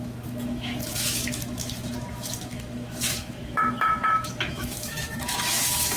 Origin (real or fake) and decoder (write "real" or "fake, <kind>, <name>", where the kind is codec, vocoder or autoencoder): fake, autoencoder, DAC-VAE